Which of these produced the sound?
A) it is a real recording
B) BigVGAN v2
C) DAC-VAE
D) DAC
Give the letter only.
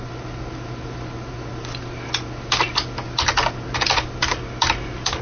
A